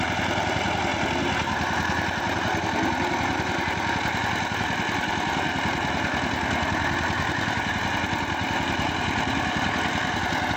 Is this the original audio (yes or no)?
yes